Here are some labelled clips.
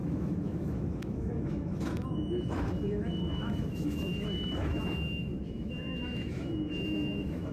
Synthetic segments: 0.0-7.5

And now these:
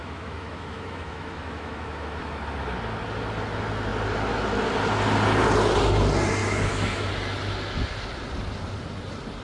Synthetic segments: 0.0-2.4; 6.4-7.1

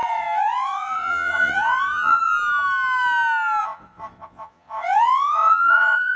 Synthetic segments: 0.0-2.2; 3.6-6.2

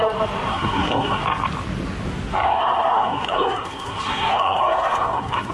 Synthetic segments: 0.5-1.2; 2.3-5.5

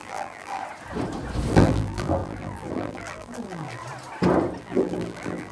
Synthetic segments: 0.0-0.6; 1.5-3.8; 4.6-5.5

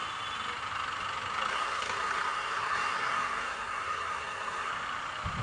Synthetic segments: 1.5-4.7

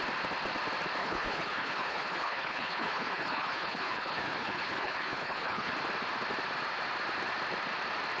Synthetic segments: 1.0-5.7

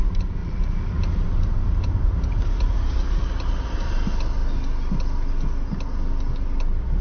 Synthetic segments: 0.4-2.5